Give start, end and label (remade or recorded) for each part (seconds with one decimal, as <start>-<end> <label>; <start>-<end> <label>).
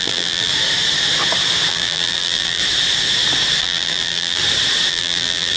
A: 0.0-0.5 remade; 0.5-1.7 recorded; 1.7-2.6 remade; 2.6-3.6 recorded; 3.6-4.4 remade; 4.4-4.9 recorded; 4.9-5.6 remade